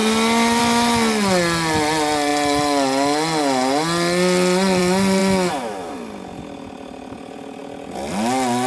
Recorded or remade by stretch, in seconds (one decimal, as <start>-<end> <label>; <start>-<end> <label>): 0.0-8.7 recorded